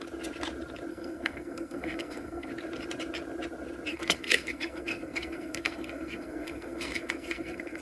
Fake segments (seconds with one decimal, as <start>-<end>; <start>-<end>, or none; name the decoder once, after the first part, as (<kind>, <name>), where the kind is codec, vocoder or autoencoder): 0.9-2.5 (codec, SNAC); 3.9-7.8